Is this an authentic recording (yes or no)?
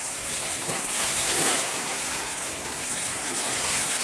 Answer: no